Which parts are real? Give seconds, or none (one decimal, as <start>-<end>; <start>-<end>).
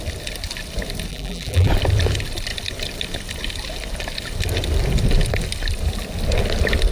0.0-1.1; 1.7-6.9